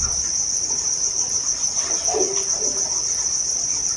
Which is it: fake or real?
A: real